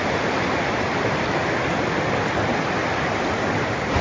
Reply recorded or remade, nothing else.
recorded